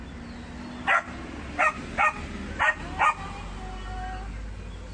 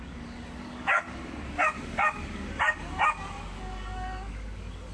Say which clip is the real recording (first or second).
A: first